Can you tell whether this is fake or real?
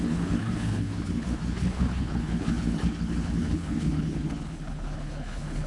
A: fake